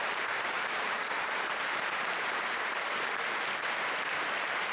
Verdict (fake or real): fake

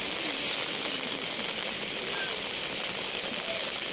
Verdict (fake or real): real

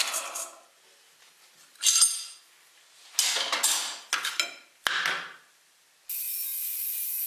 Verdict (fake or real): real